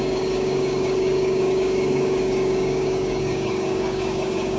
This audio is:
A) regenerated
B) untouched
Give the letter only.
A